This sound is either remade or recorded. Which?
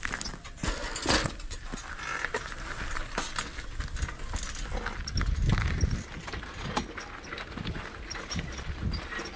recorded